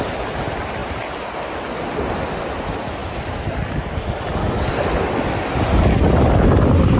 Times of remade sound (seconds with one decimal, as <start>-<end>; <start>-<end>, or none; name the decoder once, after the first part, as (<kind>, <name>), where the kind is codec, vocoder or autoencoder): none